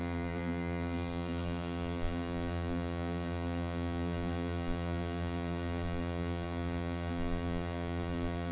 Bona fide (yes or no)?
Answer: no